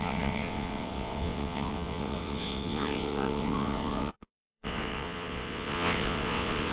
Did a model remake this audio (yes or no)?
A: yes